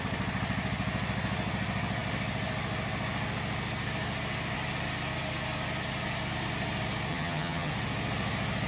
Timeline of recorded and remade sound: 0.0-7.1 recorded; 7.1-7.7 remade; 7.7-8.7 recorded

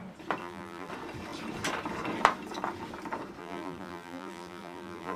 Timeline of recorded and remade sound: 0.0-0.4 recorded; 0.4-0.9 remade; 0.9-3.4 recorded; 3.4-5.2 remade

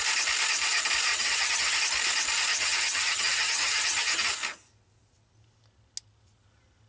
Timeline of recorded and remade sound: 0.0-1.1 recorded; 1.1-1.8 remade; 1.8-2.5 recorded; 2.5-4.3 remade; 4.3-6.9 recorded